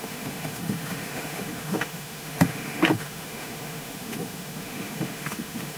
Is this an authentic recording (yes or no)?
no